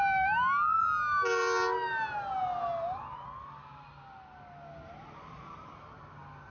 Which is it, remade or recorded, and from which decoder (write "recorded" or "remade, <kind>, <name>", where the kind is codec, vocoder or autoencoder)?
recorded